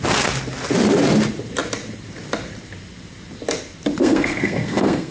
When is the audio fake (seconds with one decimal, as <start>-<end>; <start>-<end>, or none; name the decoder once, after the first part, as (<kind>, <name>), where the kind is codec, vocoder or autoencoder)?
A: 4.0-5.1 (codec, SNAC)